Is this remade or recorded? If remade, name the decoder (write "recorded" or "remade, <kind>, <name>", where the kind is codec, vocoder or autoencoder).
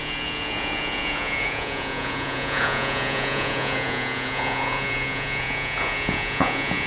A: remade, vocoder, Vocos